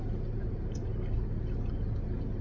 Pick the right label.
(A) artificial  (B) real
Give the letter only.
B